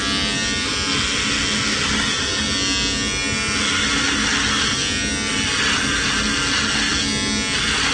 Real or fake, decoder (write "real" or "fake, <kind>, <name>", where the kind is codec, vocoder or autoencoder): real